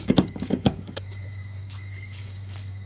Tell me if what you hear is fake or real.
fake